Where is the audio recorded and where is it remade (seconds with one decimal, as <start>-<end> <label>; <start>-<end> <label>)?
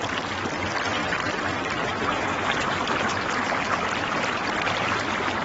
0.0-5.4 recorded